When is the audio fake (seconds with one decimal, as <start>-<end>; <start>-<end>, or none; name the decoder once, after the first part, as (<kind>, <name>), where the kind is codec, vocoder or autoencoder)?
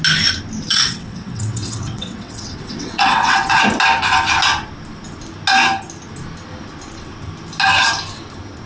0.7-3.6 (vocoder, WaveNeXt)